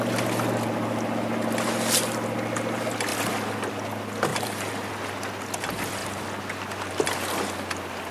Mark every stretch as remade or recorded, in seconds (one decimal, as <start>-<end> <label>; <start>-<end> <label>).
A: 0.0-4.3 recorded; 4.3-4.9 remade; 4.9-8.1 recorded